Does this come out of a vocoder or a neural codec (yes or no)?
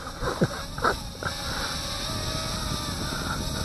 no